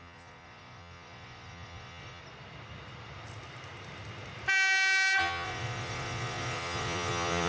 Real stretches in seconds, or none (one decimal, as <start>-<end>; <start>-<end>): 2.2-5.2